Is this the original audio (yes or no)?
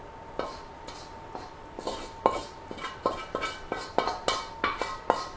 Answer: yes